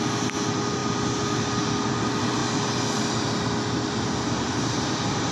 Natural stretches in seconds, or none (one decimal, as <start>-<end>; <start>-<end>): 0.0-5.3